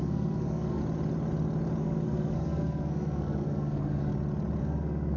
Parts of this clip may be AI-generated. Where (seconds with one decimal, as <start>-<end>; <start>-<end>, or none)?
0.0-0.8; 1.8-4.1; 4.6-5.2